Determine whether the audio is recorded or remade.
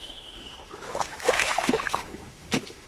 remade